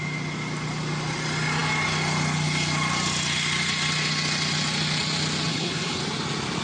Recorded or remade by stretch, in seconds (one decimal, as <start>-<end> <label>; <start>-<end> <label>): 0.0-5.5 recorded; 5.5-6.0 remade; 6.0-6.6 recorded